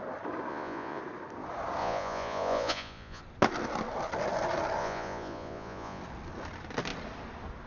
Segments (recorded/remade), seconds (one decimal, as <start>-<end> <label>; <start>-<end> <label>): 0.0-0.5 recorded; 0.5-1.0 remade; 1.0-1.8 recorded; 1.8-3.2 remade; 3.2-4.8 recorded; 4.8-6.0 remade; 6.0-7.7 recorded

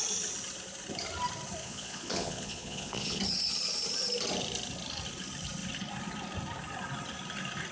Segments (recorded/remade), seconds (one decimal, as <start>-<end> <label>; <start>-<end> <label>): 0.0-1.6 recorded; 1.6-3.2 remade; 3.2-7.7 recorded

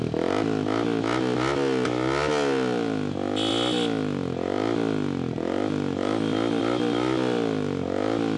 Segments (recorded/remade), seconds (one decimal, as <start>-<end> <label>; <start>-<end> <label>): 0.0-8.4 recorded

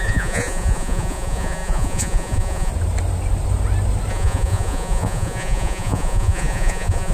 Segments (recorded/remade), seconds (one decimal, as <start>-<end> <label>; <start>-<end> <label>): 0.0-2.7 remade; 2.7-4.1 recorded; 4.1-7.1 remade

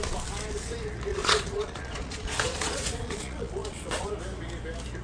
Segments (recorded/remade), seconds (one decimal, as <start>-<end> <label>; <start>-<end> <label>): 0.0-1.1 recorded; 1.1-4.1 remade; 4.1-5.0 recorded

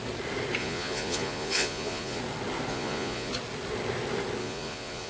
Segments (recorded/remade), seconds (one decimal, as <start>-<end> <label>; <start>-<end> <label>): 0.0-0.6 recorded; 0.6-2.2 remade; 2.2-2.7 recorded; 2.7-3.3 remade; 3.3-4.4 recorded; 4.4-5.1 remade

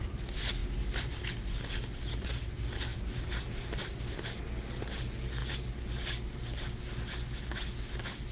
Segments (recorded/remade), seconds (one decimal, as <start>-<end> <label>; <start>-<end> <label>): 0.0-8.3 recorded

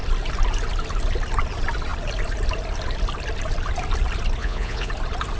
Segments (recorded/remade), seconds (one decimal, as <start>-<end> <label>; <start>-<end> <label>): 0.0-4.4 recorded; 4.4-4.9 remade; 4.9-5.4 recorded